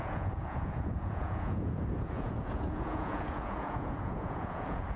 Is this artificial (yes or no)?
yes